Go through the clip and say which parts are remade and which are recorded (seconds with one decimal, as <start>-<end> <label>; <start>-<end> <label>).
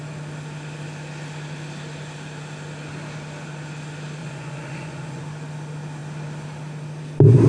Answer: 0.0-4.2 recorded; 4.2-5.2 remade; 5.2-7.5 recorded